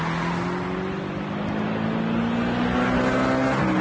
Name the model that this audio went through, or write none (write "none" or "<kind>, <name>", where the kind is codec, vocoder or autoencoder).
none